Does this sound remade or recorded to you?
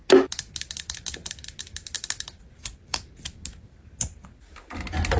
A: recorded